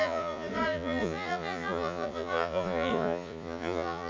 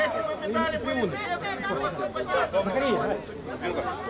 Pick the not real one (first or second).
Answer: first